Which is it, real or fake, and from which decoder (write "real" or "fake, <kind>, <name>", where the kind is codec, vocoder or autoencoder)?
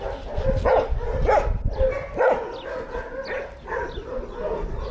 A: real